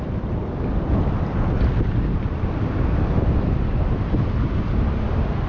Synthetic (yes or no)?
no